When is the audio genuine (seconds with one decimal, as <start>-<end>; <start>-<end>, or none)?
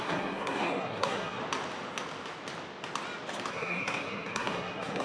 1.4-3.5